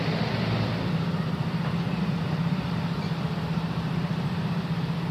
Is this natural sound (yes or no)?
no